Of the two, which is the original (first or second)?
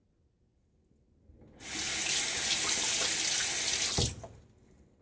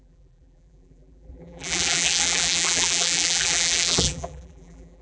first